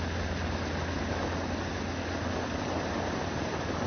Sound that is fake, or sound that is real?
real